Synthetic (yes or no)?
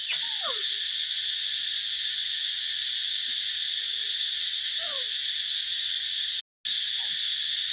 no